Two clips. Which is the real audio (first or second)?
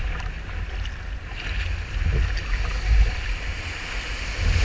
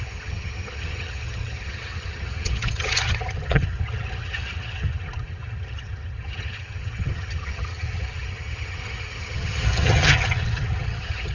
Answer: first